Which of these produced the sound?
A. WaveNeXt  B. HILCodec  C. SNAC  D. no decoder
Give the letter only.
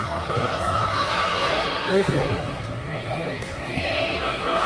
C